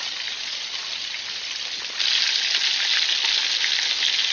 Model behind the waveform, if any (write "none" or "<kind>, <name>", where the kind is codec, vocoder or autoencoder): none